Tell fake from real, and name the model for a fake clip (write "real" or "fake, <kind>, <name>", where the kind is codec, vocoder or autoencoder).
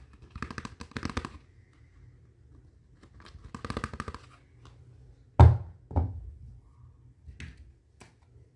real